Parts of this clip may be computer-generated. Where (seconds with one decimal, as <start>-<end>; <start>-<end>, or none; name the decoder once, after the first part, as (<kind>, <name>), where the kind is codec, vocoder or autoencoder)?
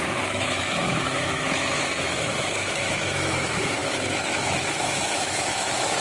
0.0-6.0 (autoencoder, DAC-VAE)